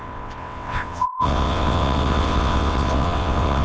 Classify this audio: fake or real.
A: fake